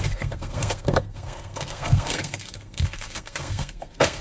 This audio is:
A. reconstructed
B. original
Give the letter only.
A